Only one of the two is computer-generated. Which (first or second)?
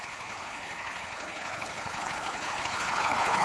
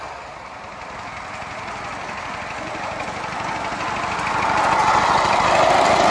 first